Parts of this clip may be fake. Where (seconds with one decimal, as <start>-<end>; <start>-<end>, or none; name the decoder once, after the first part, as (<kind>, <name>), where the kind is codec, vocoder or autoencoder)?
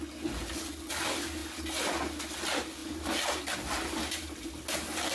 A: none